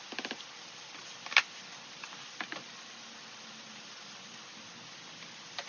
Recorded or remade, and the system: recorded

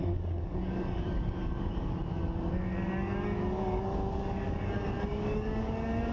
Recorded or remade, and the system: remade, codec, DAC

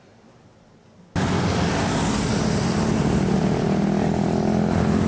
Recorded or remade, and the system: recorded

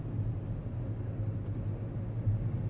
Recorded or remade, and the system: recorded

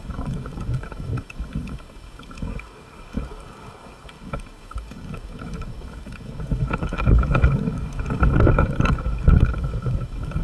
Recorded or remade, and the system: remade, codec, DAC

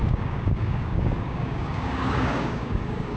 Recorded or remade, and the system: remade, codec, DAC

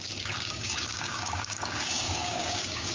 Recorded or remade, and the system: remade, codec, DAC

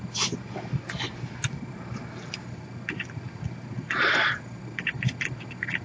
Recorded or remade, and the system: recorded